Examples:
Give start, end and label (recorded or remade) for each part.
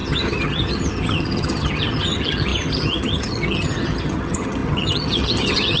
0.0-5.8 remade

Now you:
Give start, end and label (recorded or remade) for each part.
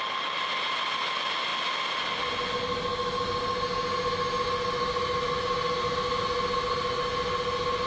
0.0-7.9 recorded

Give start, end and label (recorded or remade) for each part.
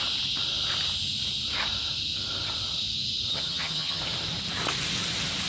0.0-3.3 recorded; 3.3-4.0 remade; 4.0-5.5 recorded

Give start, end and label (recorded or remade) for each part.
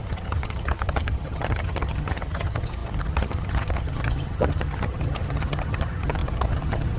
0.0-7.0 remade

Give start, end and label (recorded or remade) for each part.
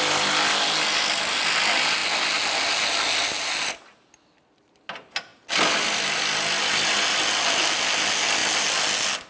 0.0-9.3 recorded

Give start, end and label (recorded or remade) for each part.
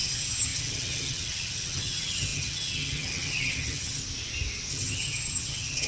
0.0-4.0 remade; 4.0-4.7 recorded; 4.7-5.9 remade